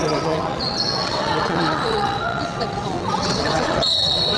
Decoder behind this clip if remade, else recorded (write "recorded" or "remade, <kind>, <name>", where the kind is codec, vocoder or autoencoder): remade, vocoder, WaveNeXt